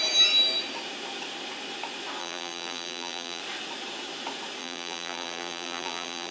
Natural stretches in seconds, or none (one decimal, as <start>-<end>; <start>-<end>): 0.0-2.2; 3.4-4.6